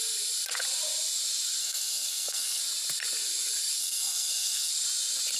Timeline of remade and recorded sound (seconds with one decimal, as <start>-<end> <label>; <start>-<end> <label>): 0.0-1.6 recorded; 1.6-2.6 remade; 2.6-3.8 recorded; 3.8-4.7 remade; 4.7-5.4 recorded